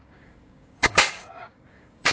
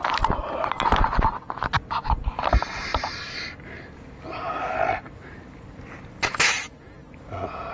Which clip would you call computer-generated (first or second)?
first